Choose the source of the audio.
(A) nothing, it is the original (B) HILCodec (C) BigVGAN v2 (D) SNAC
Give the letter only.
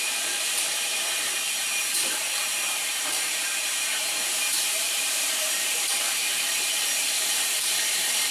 C